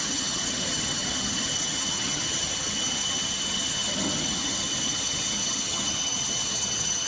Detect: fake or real fake